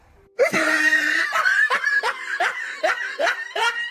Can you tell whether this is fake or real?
fake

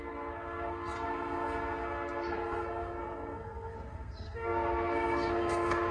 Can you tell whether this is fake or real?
fake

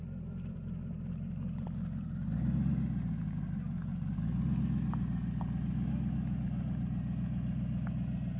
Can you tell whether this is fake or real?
real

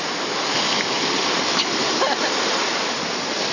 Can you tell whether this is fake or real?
real